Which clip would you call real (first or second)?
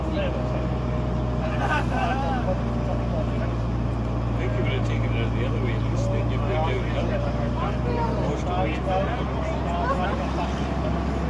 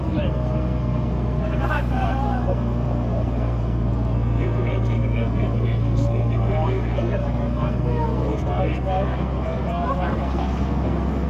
first